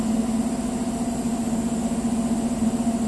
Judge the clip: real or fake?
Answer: real